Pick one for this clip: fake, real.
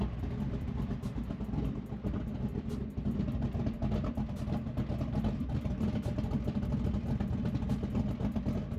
real